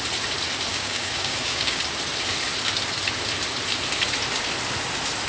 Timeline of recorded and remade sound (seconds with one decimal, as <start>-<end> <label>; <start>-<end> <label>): 0.0-0.7 recorded; 0.7-1.8 remade; 1.8-5.3 recorded